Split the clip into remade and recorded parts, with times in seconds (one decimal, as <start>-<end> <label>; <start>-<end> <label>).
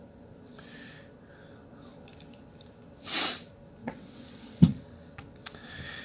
0.0-3.8 recorded; 3.8-4.8 remade; 4.8-6.0 recorded